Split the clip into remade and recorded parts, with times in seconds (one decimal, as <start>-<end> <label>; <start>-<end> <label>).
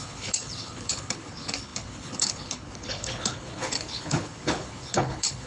0.0-5.5 remade